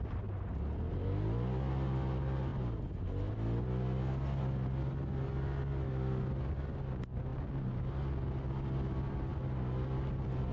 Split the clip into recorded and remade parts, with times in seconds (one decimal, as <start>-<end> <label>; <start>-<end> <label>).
0.0-10.5 recorded